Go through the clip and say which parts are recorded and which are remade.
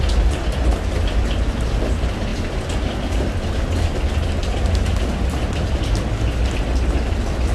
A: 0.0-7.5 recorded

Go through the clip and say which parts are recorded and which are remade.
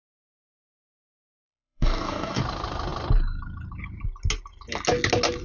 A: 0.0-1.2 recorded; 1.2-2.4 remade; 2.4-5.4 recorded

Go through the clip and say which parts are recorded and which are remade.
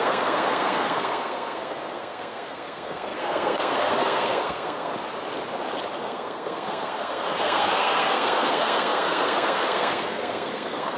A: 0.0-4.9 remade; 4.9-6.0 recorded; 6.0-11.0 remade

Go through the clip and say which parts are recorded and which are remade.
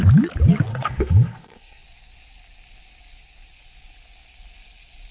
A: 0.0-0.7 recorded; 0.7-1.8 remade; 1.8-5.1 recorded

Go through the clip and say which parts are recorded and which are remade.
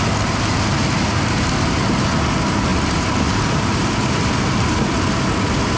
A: 0.0-2.7 recorded; 2.7-3.9 remade; 3.9-5.8 recorded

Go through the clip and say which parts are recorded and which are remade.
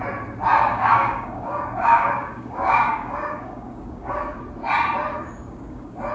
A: 0.0-0.7 recorded; 0.7-4.4 remade; 4.4-5.1 recorded; 5.1-6.1 remade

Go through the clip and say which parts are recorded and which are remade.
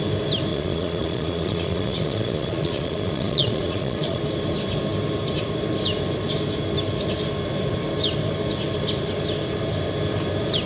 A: 0.0-0.5 recorded; 0.5-4.2 remade; 4.2-10.7 recorded